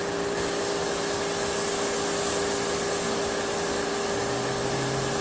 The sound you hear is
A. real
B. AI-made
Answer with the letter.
A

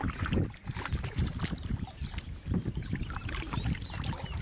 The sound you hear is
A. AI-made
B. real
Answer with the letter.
B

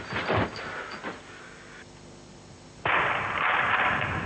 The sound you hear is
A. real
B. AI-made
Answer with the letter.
A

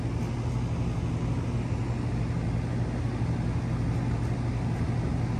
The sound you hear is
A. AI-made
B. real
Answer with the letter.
B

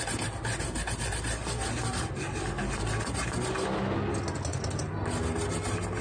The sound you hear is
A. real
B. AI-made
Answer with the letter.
A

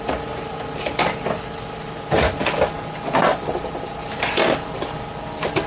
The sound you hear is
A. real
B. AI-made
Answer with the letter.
A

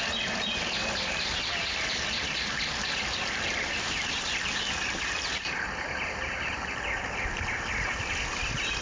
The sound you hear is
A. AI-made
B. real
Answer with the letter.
B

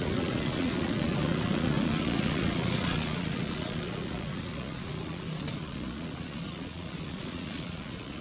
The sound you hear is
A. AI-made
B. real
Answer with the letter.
A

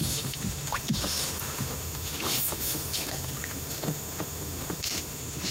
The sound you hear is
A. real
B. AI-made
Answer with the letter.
B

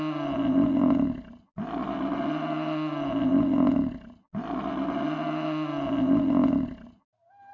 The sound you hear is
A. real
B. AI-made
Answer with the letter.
A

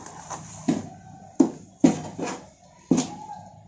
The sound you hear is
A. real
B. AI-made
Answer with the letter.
A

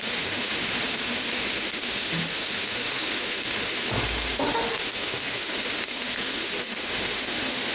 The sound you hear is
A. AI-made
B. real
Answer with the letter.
A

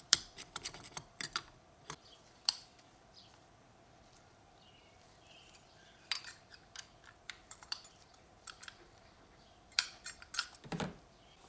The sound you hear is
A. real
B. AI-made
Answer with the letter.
B